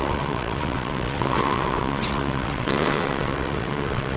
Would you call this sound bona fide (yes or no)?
no